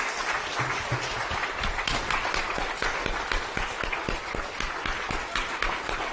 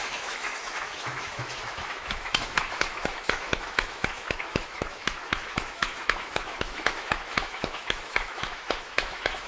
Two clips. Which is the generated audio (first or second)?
second